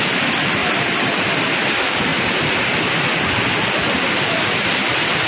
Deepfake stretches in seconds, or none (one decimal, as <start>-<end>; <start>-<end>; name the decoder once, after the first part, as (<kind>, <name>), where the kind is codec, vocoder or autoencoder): 0.6-1.3 (vocoder, BigVGAN v2)

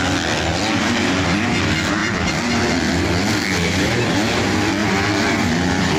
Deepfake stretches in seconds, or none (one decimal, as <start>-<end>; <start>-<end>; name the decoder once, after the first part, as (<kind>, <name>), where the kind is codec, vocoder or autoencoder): 0.5-1.6 (vocoder, BigVGAN v2); 2.0-2.6; 4.8-5.5